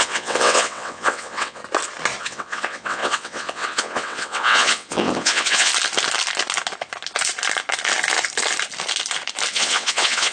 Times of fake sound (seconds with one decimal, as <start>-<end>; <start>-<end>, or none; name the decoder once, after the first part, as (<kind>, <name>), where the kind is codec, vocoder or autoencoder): 0.0-1.6 (vocoder, WaveNeXt); 2.2-5.7; 9.5-10.3